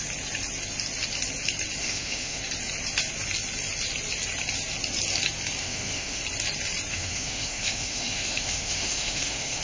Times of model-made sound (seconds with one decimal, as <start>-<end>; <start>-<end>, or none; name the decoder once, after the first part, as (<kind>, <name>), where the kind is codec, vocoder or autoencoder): 1.8-2.4 (autoencoder, DAC-VAE); 5.6-6.2; 6.9-9.6